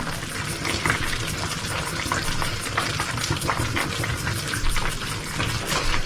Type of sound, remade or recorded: recorded